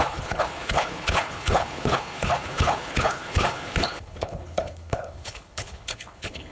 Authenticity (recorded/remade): remade